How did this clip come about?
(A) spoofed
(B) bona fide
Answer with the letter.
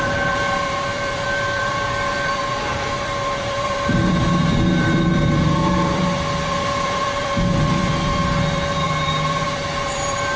A